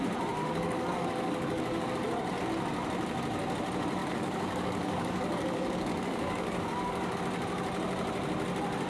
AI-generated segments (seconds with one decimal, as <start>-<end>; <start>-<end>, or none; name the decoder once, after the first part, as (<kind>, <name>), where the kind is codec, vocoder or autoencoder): 0.4-1.9 (codec, DAC); 4.0-7.2